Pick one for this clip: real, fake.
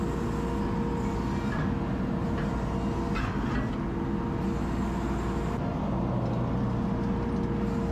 real